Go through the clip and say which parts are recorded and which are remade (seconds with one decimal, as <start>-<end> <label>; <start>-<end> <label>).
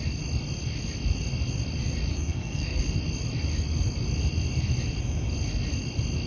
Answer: 0.0-2.1 recorded; 2.1-2.8 remade; 2.8-6.3 recorded